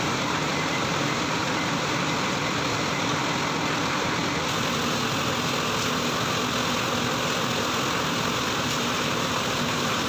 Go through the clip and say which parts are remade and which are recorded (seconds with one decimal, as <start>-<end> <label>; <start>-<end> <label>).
0.0-3.2 remade; 3.2-3.8 recorded; 3.8-4.2 remade; 4.2-8.3 recorded; 8.3-10.1 remade